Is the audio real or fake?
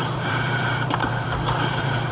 fake